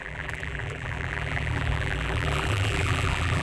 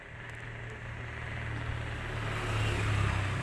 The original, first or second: second